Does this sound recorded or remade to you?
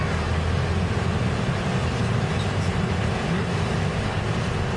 recorded